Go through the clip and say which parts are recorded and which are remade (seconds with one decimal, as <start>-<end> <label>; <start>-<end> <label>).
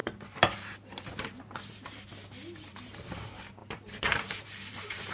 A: 0.0-2.1 remade; 2.1-2.7 recorded; 2.7-5.1 remade